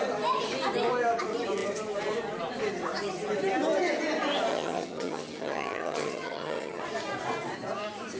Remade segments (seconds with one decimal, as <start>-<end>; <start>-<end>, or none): 4.5-6.8